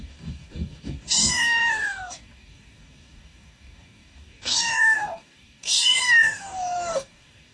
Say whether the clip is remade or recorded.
remade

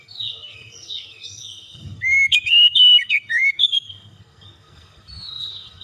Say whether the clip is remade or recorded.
remade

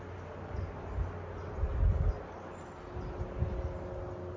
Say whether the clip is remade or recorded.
recorded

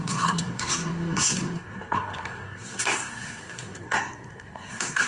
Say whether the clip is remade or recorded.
remade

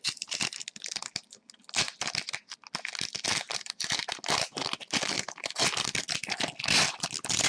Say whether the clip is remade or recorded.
recorded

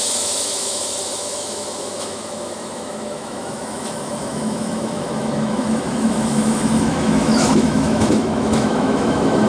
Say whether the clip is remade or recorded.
remade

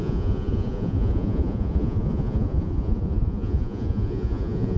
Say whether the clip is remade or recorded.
remade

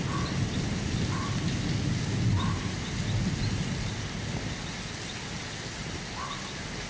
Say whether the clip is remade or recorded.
recorded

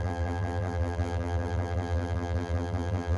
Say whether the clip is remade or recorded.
remade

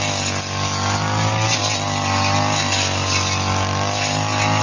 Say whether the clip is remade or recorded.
recorded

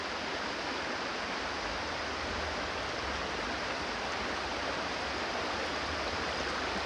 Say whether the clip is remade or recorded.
recorded